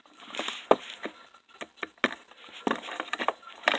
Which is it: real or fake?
real